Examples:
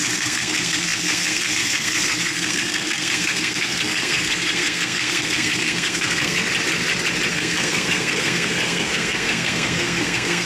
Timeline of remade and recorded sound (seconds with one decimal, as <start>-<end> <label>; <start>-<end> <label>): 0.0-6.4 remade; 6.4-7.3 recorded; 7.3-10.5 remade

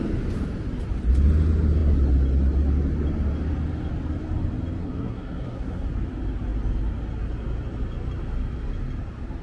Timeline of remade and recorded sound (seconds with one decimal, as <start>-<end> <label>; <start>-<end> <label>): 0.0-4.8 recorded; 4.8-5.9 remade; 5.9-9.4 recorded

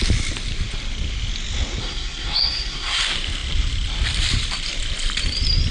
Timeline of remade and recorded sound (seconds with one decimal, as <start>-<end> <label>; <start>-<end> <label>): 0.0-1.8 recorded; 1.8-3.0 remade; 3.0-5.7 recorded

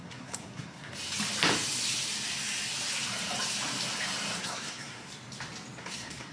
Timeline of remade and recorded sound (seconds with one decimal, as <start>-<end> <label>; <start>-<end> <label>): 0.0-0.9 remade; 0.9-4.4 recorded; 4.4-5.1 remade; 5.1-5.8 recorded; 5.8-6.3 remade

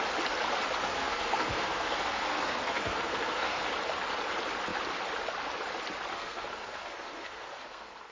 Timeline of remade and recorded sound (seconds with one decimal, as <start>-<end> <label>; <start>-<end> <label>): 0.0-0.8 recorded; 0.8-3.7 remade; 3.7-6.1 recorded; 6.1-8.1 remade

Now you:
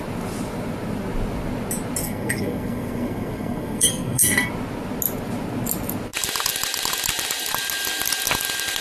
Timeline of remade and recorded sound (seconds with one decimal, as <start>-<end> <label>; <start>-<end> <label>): 0.0-2.0 recorded; 2.0-4.5 remade; 4.5-8.8 recorded